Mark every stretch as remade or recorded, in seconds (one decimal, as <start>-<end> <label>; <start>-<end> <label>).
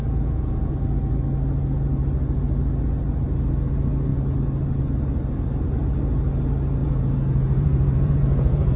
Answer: 0.0-0.7 remade; 0.7-6.8 recorded; 6.8-8.8 remade